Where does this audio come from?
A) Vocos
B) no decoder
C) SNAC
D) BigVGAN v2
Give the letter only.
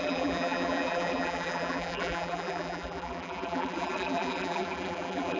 D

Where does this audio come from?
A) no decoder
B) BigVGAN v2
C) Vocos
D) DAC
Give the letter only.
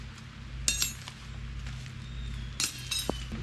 A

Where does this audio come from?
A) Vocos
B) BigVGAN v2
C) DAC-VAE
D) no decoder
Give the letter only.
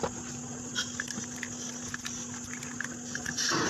D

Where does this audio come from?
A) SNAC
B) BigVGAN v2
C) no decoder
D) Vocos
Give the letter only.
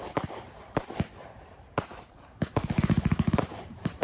B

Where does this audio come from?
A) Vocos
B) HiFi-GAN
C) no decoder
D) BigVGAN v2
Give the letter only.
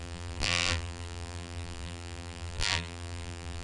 D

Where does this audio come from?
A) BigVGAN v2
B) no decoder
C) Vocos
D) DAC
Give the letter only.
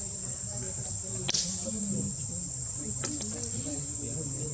B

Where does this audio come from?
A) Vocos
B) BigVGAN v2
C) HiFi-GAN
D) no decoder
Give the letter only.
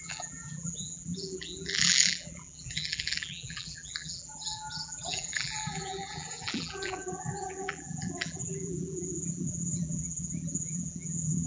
B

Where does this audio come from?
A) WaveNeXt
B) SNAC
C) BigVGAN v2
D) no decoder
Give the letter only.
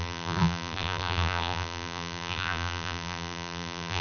C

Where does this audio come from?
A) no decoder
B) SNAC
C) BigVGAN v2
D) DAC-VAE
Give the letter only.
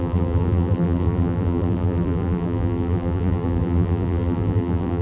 C